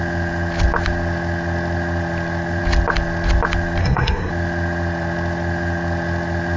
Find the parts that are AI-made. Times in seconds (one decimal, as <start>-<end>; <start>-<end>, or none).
3.8-4.3